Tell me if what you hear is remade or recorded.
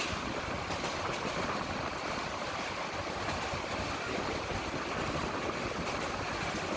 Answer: recorded